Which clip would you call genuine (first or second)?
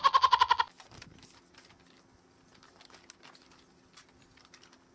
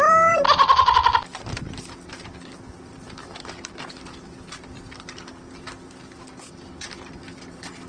first